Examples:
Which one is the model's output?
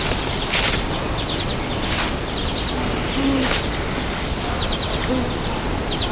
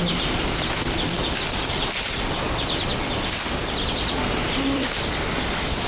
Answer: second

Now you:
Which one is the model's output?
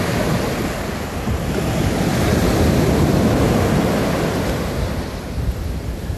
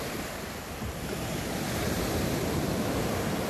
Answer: second